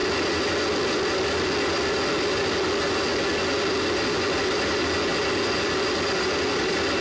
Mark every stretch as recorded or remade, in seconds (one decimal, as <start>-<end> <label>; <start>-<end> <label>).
0.0-7.0 recorded